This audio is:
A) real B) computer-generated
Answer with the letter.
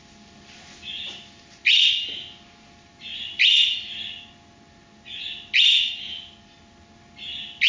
A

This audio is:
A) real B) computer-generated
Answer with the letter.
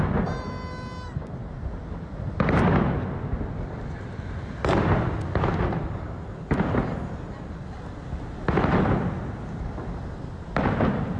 A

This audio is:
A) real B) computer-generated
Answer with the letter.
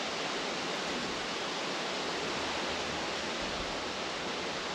A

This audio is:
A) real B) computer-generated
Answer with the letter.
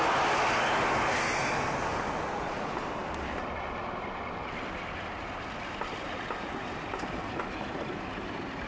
A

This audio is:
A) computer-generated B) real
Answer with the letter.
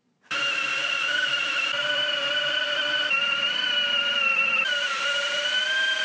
A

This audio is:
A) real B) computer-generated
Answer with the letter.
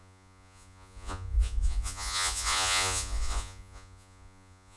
B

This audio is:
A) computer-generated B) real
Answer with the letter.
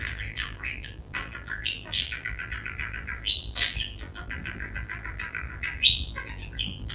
A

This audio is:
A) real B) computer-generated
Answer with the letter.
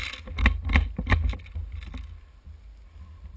A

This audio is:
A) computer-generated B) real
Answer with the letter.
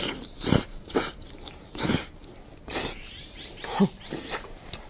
A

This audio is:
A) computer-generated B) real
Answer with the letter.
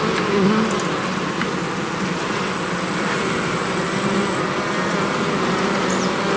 B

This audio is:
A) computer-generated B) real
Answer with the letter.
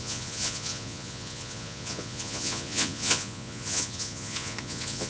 A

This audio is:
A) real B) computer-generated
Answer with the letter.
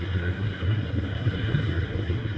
B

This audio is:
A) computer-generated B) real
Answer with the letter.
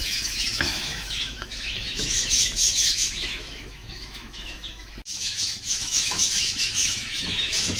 A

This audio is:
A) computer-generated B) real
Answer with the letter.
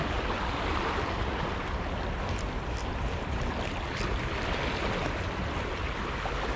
B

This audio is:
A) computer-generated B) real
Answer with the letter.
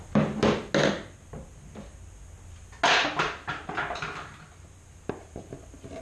B